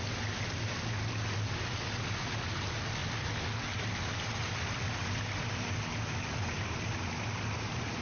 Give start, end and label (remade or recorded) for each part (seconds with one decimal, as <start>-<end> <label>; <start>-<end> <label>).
0.0-8.0 recorded